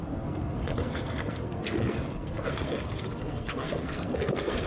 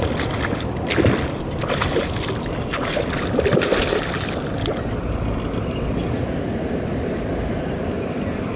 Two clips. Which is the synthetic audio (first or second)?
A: first